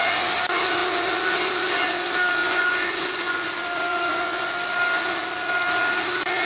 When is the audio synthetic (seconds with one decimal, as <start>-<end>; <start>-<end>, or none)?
2.4-3.5; 3.9-4.5